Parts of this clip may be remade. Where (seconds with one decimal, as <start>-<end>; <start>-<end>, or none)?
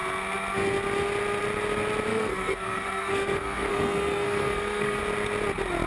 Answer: 2.1-5.0